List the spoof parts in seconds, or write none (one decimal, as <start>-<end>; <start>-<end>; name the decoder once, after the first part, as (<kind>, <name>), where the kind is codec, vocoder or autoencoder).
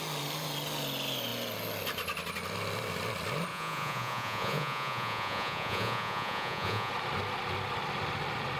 3.5-6.9 (vocoder, Vocos)